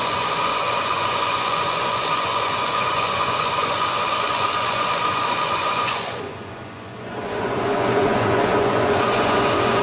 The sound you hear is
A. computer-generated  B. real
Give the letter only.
A